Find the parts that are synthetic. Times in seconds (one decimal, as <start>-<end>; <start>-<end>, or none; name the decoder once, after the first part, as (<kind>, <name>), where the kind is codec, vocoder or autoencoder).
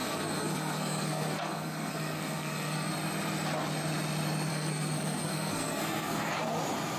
0.0-2.9 (codec, SNAC); 4.5-6.3